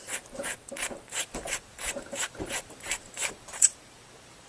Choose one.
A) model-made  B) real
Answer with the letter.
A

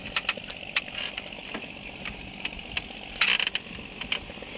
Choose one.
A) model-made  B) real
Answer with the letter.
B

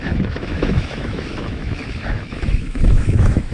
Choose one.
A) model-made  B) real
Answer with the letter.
A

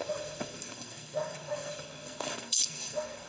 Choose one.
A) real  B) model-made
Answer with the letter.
B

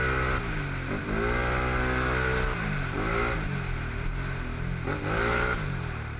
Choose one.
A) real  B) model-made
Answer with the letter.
A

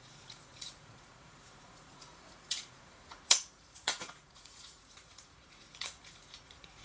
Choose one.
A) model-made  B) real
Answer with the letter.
A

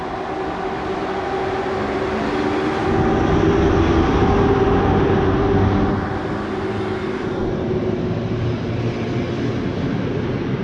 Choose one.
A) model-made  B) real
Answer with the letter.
B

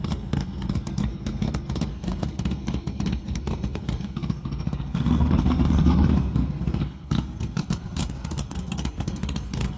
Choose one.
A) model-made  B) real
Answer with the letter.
A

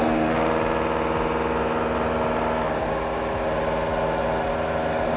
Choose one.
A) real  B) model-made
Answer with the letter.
A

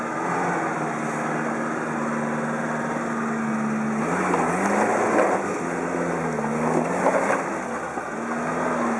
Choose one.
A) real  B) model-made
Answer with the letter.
A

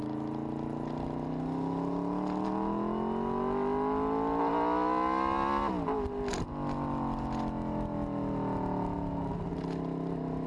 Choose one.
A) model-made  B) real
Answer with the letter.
B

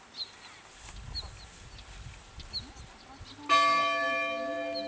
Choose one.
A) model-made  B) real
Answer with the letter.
B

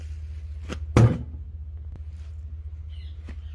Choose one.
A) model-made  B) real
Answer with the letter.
B